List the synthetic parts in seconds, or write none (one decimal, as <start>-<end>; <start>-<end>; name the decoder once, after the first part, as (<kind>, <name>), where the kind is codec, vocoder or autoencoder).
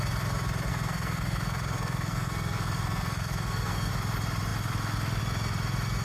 0.7-3.9 (codec, SNAC)